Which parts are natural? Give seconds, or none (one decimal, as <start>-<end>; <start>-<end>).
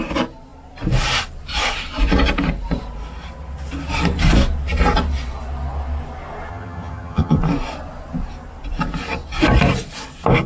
0.0-6.5; 7.4-10.5